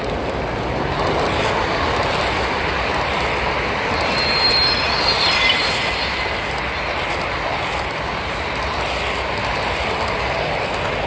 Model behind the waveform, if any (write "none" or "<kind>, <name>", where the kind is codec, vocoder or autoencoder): none